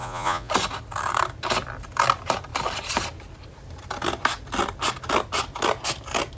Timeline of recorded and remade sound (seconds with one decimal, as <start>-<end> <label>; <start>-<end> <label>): 0.0-0.5 remade; 0.5-6.4 recorded

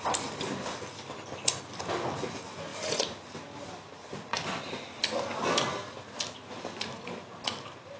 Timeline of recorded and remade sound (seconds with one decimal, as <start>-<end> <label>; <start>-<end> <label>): 0.0-8.0 recorded

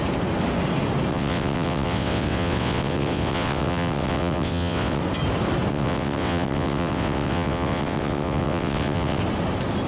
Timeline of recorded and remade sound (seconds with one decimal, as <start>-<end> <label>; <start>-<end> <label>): 0.0-1.1 recorded; 1.1-5.0 remade; 5.0-5.7 recorded; 5.7-9.2 remade; 9.2-9.9 recorded